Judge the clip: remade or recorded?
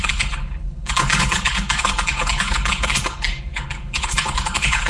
remade